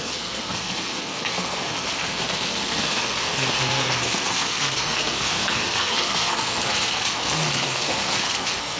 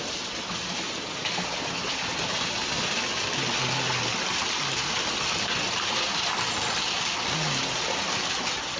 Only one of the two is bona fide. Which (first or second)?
second